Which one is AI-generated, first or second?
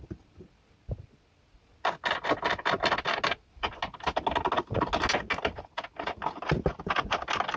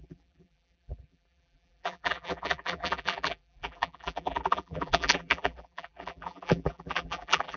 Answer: second